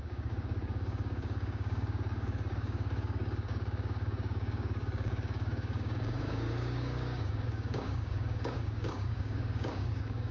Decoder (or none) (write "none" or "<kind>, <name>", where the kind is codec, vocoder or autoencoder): codec, DAC